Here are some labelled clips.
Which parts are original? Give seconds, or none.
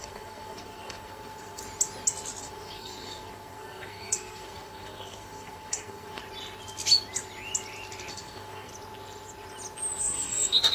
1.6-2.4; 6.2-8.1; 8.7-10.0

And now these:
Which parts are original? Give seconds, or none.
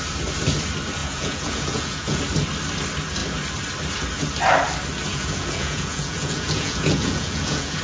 0.0-1.0; 2.2-5.1